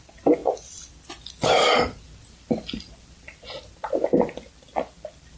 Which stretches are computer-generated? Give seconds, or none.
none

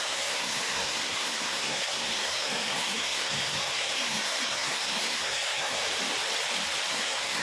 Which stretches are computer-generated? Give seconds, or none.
0.0-5.8 (codec, SNAC); 6.9-7.4